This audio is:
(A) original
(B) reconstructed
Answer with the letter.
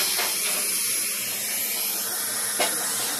A